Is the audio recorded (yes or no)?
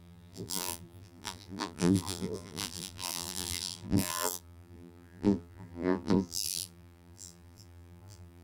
no